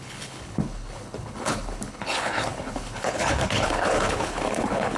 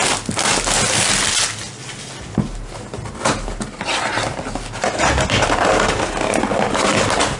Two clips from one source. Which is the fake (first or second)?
first